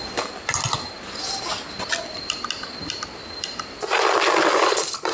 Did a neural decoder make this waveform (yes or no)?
no